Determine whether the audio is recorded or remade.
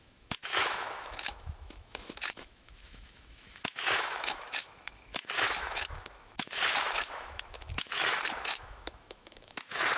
remade